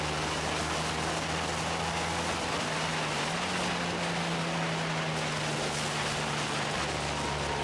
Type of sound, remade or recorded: recorded